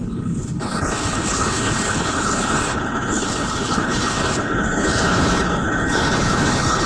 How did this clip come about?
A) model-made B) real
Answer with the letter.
A